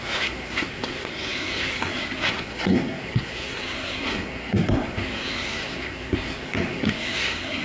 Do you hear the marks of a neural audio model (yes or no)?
yes